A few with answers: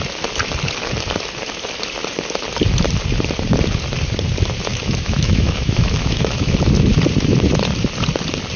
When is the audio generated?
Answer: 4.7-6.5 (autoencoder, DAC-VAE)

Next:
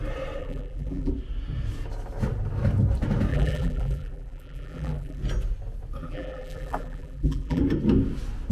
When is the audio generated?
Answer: 0.4-1.1 (vocoder, BigVGAN v2); 3.3-5.2; 6.0-7.6

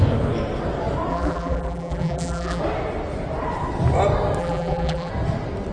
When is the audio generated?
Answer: 1.1-2.6 (vocoder, BigVGAN v2); 4.4-5.1